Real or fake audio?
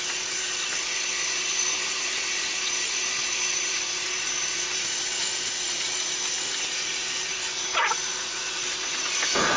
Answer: fake